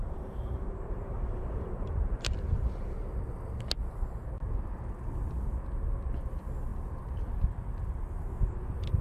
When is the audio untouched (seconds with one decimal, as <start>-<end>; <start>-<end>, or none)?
3.0-9.0